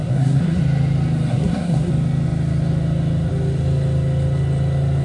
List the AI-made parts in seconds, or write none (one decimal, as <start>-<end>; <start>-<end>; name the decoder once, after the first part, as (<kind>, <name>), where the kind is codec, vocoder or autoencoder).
0.0-0.6 (codec, SNAC); 1.3-1.9